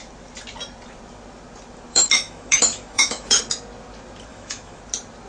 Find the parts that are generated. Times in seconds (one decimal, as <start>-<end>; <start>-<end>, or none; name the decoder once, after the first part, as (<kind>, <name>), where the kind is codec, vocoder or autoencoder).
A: 1.9-3.4 (autoencoder, DAC-VAE); 4.3-4.8